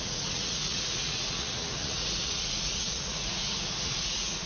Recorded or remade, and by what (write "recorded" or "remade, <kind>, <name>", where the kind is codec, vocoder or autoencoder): remade, vocoder, Vocos